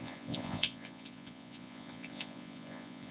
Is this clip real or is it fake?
fake